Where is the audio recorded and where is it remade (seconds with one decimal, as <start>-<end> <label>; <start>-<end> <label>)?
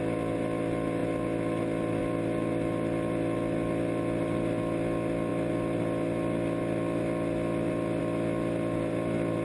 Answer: 0.0-9.4 recorded